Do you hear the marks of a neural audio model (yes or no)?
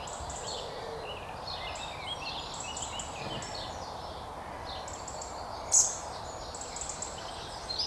no